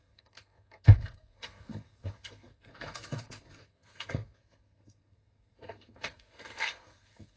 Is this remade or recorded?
remade